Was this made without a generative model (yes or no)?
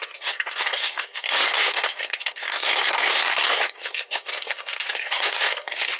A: no